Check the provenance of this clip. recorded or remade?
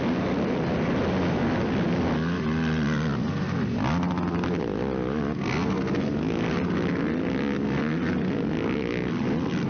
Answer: recorded